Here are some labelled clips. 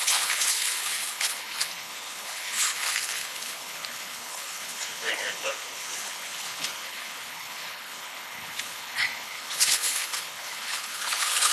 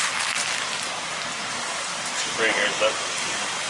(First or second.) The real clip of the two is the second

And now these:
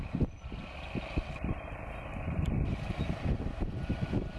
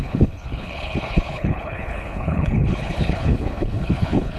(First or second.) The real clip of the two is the first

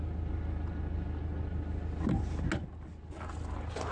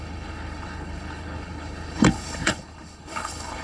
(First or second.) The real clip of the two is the first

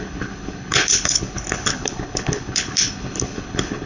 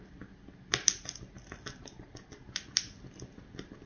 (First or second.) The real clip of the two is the second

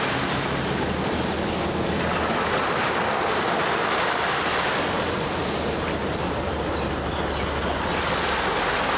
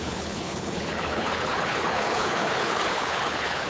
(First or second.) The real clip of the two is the first